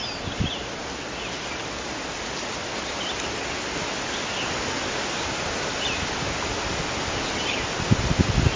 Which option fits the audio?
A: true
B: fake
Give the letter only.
A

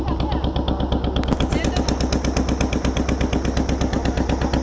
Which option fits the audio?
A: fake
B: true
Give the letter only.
B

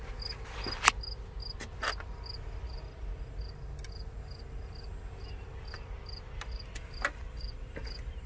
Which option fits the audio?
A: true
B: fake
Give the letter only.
A